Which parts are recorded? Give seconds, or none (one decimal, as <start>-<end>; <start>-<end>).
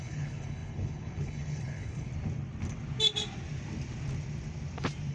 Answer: 2.1-5.1